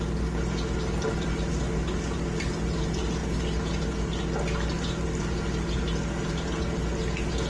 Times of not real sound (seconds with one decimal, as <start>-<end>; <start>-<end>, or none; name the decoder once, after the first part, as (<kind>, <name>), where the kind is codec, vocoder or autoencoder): none